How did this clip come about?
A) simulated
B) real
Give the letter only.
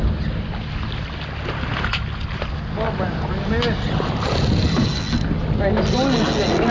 B